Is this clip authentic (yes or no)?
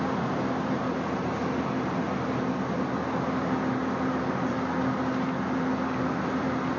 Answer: yes